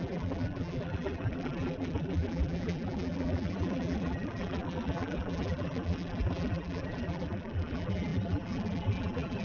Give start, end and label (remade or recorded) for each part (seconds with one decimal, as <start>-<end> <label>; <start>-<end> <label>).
0.0-9.4 remade